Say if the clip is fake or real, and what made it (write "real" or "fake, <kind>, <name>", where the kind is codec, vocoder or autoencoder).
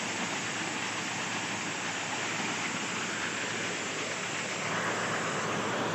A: real